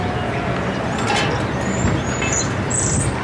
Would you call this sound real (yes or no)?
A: yes